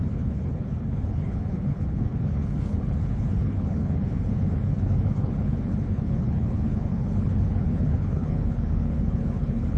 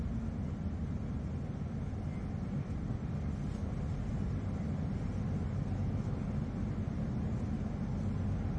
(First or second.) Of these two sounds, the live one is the second